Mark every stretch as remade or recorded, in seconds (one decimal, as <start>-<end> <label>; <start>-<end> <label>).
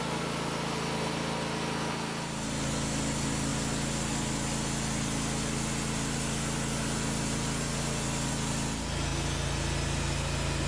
0.0-10.7 recorded